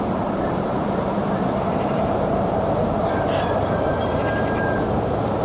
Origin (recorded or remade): remade